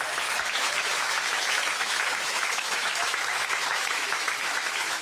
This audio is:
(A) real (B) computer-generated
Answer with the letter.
B